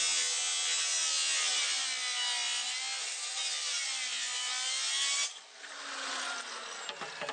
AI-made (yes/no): no